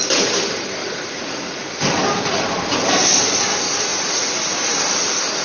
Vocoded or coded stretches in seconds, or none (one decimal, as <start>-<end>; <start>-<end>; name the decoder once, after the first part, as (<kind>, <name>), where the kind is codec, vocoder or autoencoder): 0.8-1.6 (vocoder, Vocos); 3.9-4.7